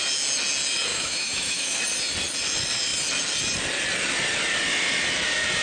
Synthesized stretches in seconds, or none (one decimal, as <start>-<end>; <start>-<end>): 0.9-1.8

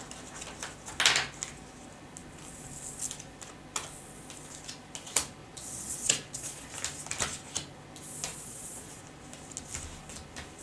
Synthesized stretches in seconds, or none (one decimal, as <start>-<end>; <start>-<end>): 5.4-6.7; 8.3-9.0

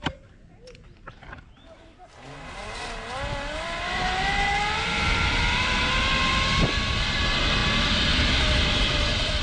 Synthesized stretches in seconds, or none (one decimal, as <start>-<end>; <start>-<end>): none

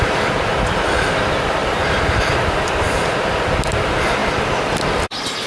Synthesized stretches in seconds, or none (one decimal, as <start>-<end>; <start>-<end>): 0.0-5.5

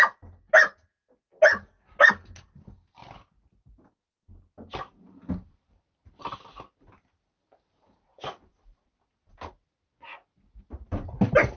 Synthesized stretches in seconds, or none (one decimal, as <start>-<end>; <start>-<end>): none